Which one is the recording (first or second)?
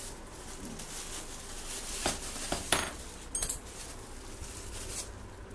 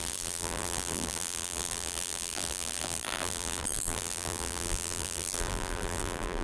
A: first